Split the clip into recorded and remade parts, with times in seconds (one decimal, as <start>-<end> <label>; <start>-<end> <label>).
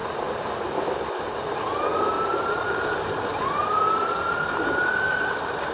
0.0-5.7 recorded